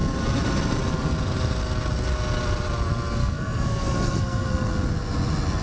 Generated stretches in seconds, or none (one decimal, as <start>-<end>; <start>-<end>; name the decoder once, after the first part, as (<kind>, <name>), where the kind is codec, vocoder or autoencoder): 3.2-4.7 (codec, SNAC)